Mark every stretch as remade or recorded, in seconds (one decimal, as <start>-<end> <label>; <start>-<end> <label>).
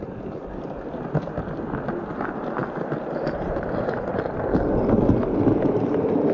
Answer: 0.0-6.3 recorded